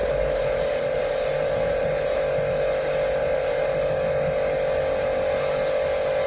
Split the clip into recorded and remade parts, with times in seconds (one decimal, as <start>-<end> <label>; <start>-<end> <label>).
0.0-2.2 remade; 2.2-3.2 recorded; 3.2-3.7 remade; 3.7-6.3 recorded